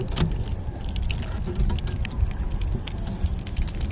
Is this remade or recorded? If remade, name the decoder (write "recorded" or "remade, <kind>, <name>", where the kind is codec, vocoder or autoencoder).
recorded